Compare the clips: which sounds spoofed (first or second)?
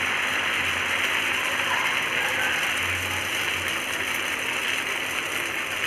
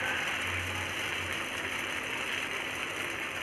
second